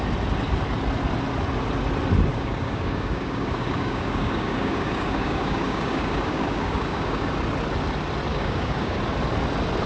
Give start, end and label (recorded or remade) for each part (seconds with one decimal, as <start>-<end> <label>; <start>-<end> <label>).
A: 0.0-2.3 recorded; 2.3-7.3 remade; 7.3-8.3 recorded; 8.3-9.0 remade; 9.0-9.9 recorded